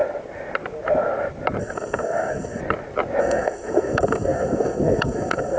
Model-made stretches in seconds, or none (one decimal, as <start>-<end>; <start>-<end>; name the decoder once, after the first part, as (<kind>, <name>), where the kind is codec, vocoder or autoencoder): 1.6-2.6 (codec, SNAC); 3.2-5.6